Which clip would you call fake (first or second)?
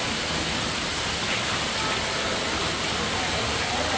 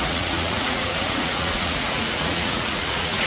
second